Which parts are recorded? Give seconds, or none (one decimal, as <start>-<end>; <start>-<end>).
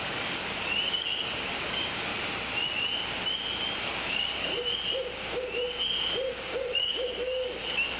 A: 0.4-0.9; 2.1-4.0; 4.5-6.3